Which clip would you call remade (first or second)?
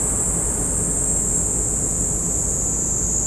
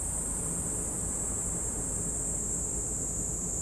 second